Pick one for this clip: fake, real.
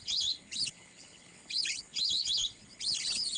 fake